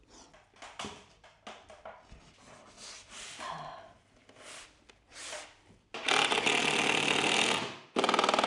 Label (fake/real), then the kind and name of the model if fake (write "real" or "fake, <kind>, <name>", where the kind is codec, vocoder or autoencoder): real